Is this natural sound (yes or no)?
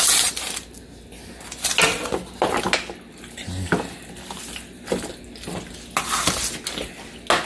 yes